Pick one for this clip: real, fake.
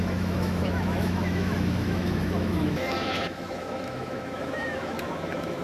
fake